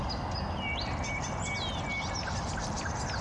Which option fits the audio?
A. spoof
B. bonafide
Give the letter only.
B